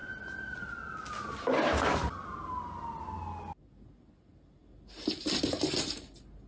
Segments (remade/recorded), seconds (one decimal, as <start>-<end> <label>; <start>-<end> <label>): 0.0-6.5 recorded